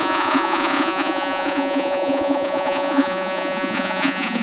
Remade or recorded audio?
remade